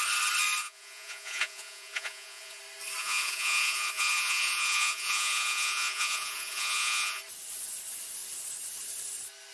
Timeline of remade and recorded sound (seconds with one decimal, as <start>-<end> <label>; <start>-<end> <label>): 0.0-0.6 recorded; 0.6-2.6 remade; 2.6-3.0 recorded; 3.0-7.2 remade; 7.2-9.5 recorded

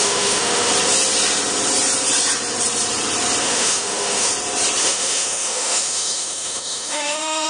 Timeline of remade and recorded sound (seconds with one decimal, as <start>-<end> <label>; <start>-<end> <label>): 0.0-0.7 remade; 0.7-3.4 recorded; 3.4-4.3 remade; 4.3-4.8 recorded; 4.8-7.5 remade

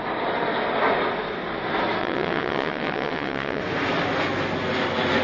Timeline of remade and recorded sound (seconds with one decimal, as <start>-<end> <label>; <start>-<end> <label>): 0.0-2.0 recorded; 2.0-3.6 remade; 3.6-5.2 recorded

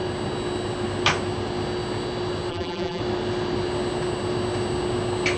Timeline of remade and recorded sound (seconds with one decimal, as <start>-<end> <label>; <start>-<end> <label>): 0.0-2.5 recorded; 2.5-3.0 remade; 3.0-5.4 recorded

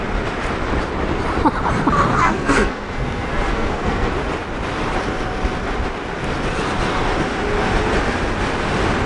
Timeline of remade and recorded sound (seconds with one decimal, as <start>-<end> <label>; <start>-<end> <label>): 0.0-2.1 recorded; 2.1-4.1 remade; 4.1-9.1 recorded

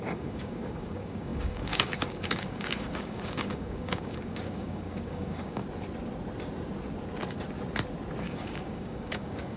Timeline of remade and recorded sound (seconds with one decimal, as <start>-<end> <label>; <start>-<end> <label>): 0.0-5.6 remade; 5.6-8.2 recorded; 8.2-9.6 remade

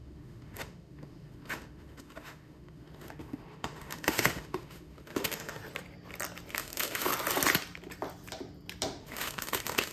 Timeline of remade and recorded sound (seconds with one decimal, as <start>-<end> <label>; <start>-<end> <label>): 0.0-5.6 remade; 5.6-6.5 recorded; 6.5-7.1 remade; 7.1-9.0 recorded; 9.0-9.9 remade

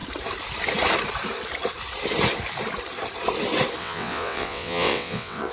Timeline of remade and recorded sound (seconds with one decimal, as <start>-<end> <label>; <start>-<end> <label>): 0.0-3.8 recorded; 3.8-5.5 remade